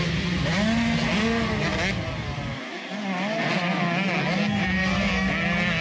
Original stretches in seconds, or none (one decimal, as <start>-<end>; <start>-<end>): 0.0-4.8; 5.3-5.8